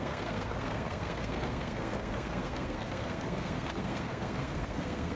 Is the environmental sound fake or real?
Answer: fake